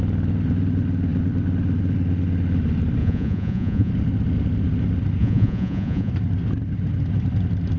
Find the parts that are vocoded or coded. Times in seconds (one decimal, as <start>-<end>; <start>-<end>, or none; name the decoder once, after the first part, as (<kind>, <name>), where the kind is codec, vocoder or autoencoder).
3.0-3.9 (vocoder, Vocos); 5.2-6.1